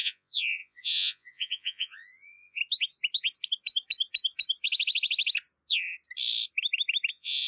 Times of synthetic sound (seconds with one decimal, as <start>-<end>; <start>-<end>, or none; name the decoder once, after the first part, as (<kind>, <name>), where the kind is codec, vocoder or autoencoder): 0.0-2.6 (vocoder, Vocos); 7.1-7.5